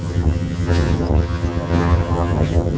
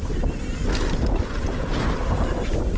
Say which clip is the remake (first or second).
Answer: first